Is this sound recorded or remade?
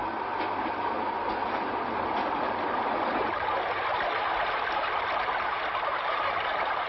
recorded